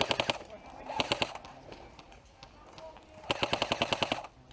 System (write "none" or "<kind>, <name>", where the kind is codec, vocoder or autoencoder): none